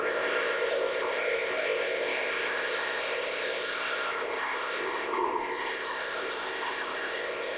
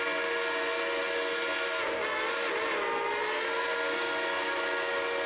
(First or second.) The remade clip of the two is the first